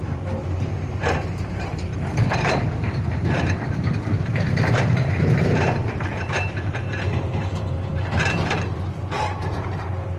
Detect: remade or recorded remade